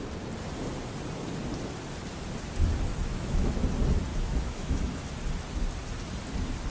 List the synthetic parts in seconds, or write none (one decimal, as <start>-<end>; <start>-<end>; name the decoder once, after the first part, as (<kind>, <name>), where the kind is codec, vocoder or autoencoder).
2.9-3.6 (autoencoder, DAC-VAE); 4.1-4.8